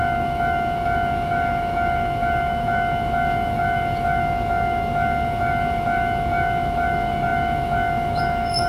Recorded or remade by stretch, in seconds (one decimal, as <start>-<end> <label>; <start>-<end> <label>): 0.0-8.7 remade